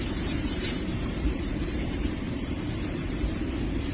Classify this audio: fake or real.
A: fake